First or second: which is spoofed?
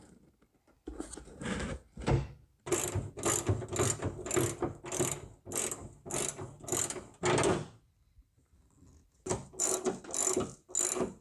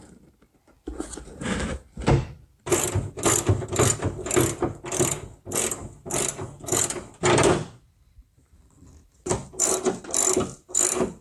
second